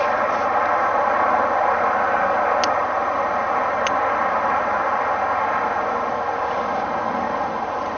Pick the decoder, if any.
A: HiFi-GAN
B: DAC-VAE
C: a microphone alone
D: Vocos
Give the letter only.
C